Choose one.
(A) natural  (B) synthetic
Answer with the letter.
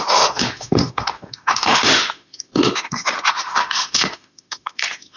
B